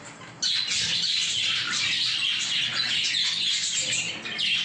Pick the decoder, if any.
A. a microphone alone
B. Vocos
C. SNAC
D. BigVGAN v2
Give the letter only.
A